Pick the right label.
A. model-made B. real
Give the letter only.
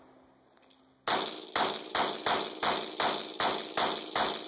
B